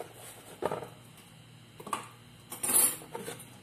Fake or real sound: real